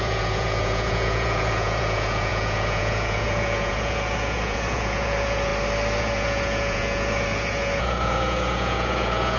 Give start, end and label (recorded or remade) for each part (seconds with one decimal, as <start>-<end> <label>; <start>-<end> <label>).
0.0-5.5 remade; 5.5-6.0 recorded; 6.0-9.4 remade